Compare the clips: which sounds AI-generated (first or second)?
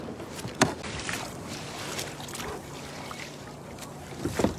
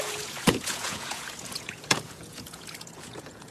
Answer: second